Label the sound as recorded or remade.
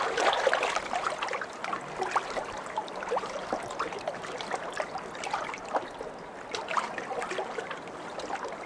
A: recorded